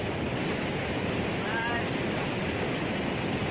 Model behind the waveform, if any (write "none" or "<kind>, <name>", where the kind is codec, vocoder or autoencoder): vocoder, BigVGAN v2